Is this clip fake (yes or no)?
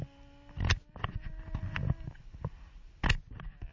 no